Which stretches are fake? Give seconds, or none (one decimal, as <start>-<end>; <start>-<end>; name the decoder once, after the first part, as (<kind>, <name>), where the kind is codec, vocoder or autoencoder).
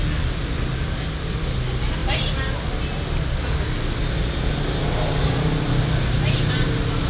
none